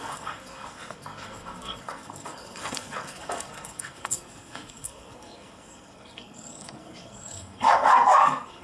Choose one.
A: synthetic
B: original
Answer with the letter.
A